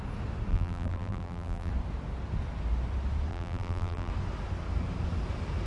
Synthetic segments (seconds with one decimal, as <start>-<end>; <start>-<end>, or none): 0.5-1.7; 3.3-4.1

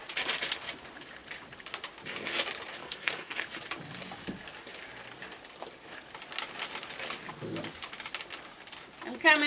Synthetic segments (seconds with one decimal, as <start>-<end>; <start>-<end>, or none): 2.8-3.4

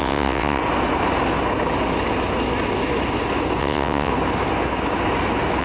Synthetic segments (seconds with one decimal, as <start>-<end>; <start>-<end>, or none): 0.0-0.6; 3.6-4.1

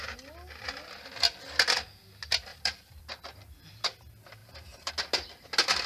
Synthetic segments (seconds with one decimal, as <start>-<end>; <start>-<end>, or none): 2.5-3.0; 4.4-4.9

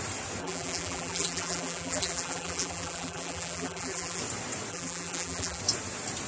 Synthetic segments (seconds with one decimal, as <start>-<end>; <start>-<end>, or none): 0.4-4.2; 4.7-5.6